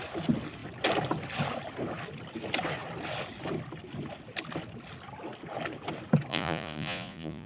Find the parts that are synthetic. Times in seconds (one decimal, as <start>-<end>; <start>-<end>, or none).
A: 6.3-7.5